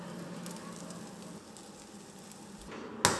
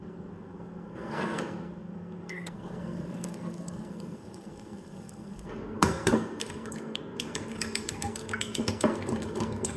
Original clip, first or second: first